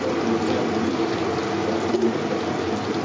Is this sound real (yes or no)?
yes